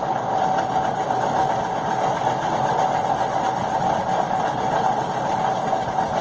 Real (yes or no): yes